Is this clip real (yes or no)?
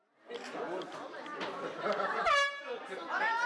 yes